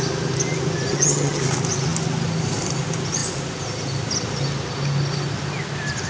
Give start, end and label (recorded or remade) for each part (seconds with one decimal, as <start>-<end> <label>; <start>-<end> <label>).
0.0-0.9 recorded; 0.9-1.4 remade; 1.4-6.1 recorded